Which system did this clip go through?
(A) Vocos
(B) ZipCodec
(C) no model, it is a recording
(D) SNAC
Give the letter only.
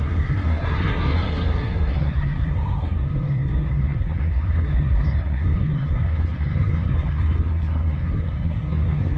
D